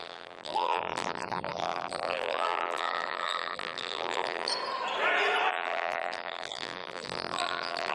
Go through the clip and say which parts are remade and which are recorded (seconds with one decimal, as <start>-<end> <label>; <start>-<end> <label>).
0.0-4.5 remade; 4.5-5.5 recorded; 5.5-7.9 remade